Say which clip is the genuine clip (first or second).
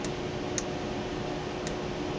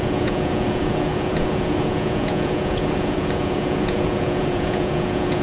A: first